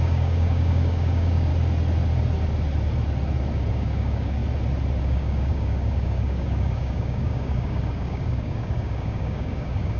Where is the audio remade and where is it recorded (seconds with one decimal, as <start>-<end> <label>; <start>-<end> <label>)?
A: 0.0-1.5 remade; 1.5-3.7 recorded; 3.7-4.4 remade; 4.4-5.0 recorded; 5.0-10.0 remade